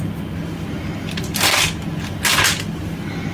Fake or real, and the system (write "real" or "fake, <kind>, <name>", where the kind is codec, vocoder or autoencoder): real